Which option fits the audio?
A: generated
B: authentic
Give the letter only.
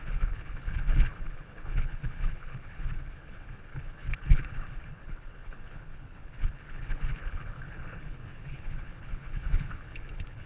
A